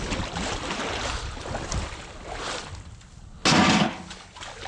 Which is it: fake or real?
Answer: real